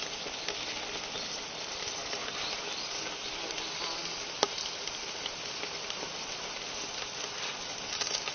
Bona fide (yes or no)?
yes